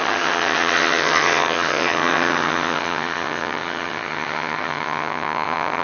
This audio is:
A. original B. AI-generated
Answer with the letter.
B